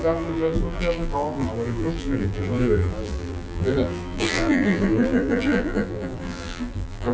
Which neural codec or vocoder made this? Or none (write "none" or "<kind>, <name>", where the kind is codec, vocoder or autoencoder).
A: vocoder, BigVGAN v2